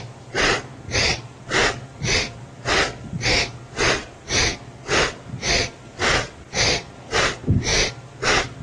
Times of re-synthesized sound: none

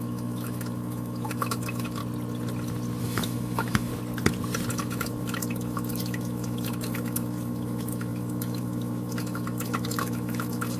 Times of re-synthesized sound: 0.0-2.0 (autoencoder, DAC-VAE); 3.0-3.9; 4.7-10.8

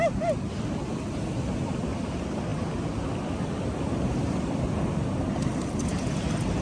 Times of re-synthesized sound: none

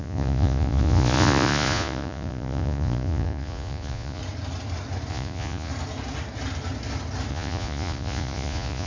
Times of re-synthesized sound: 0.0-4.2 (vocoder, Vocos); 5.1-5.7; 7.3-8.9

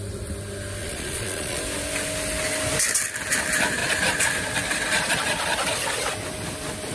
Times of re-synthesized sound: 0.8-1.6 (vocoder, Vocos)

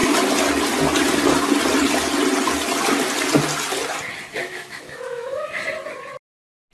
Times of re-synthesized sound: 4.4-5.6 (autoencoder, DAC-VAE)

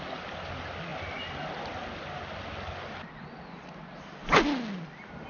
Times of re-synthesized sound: none